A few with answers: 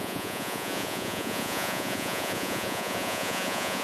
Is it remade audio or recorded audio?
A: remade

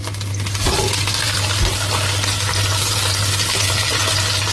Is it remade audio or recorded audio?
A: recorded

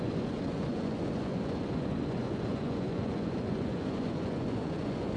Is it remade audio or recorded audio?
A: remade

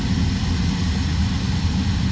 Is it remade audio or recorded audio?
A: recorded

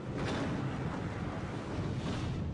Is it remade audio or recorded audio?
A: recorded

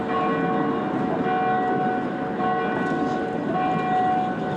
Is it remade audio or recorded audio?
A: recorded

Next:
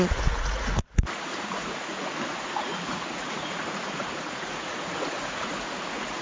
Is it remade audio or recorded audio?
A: remade